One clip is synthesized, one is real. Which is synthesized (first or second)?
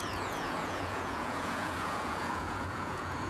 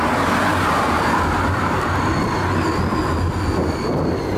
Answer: first